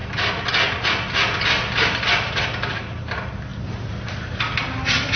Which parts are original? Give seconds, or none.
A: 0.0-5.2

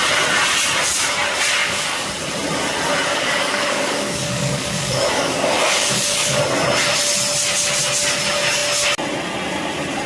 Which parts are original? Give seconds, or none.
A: 0.0-1.6; 2.1-3.1; 6.4-10.1

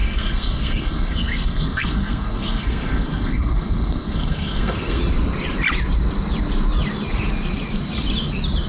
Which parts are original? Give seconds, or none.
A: 5.0-8.7

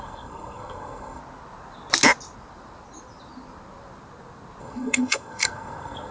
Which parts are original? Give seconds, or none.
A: 1.2-4.6

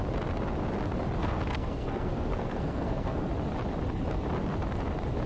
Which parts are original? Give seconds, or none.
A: 0.0-1.2; 3.3-5.3

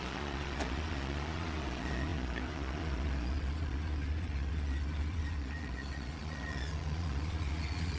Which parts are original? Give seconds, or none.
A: none

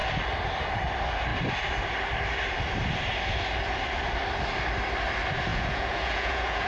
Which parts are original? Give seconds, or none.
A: 0.0-5.5

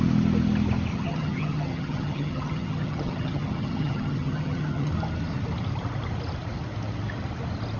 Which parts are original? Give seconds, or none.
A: 0.0-0.9; 4.9-7.8